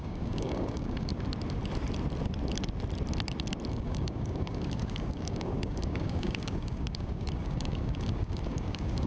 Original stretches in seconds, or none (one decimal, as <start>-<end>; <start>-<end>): 1.1-3.7